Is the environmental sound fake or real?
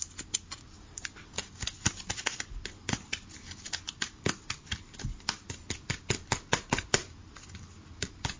real